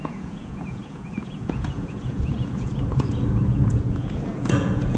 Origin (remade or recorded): remade